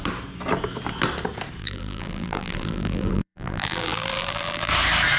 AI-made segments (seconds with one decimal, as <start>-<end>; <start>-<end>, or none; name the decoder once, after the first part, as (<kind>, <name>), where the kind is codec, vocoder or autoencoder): 1.6-4.7 (vocoder, BigVGAN v2)